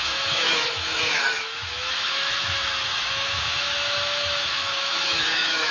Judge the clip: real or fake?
fake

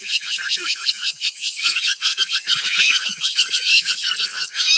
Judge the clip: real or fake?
fake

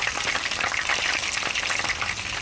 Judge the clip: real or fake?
real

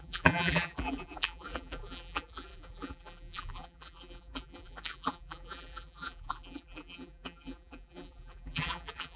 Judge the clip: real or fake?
fake